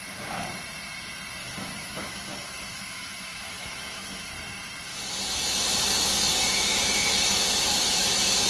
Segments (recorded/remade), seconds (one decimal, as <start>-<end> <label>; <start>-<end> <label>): 0.0-1.4 recorded; 1.4-4.3 remade; 4.3-4.9 recorded; 4.9-8.5 remade